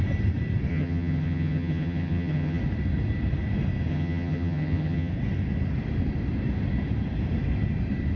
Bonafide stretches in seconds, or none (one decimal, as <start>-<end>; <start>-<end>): 0.0-0.7; 2.6-3.9; 5.1-8.2